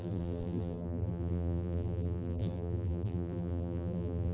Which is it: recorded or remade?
remade